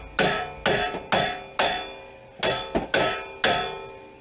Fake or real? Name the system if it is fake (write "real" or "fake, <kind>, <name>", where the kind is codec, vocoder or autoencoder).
real